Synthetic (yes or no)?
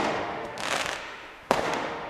yes